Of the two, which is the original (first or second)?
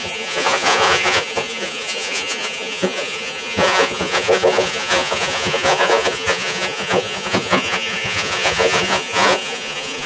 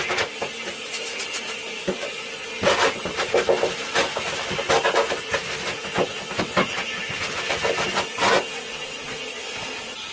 second